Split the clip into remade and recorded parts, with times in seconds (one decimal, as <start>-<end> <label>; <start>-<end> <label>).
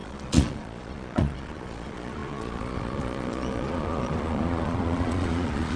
0.0-5.8 remade